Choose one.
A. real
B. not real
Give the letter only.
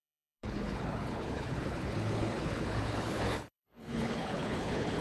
B